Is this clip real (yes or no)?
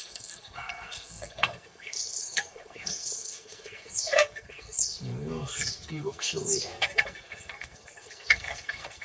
no